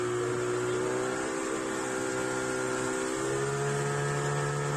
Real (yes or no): yes